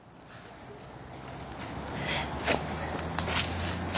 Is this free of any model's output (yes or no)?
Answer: yes